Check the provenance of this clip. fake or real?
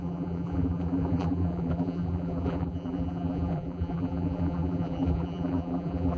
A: fake